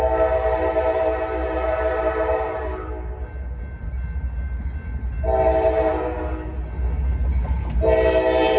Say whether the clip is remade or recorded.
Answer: recorded